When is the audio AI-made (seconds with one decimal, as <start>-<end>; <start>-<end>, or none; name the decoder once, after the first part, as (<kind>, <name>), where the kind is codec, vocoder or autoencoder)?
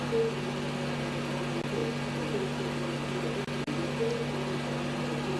none